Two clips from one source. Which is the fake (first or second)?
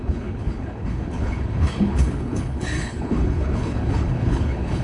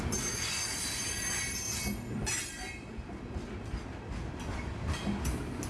first